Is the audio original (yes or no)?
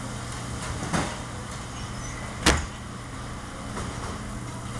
yes